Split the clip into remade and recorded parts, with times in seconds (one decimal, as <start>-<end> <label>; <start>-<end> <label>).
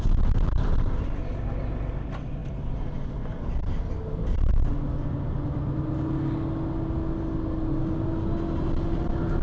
0.0-9.4 recorded